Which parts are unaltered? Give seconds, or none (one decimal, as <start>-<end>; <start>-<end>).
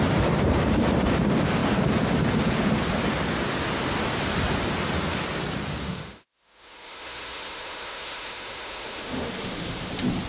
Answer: 0.0-5.8; 9.9-10.3